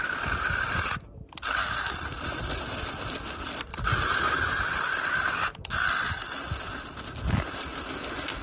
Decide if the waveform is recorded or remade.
recorded